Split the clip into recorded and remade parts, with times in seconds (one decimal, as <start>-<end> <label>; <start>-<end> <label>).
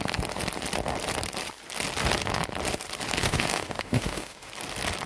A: 0.0-3.2 recorded; 3.2-4.5 remade; 4.5-5.1 recorded